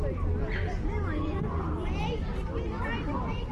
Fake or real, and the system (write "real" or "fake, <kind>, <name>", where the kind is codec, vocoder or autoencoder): real